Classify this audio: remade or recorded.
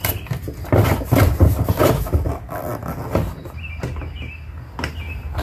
recorded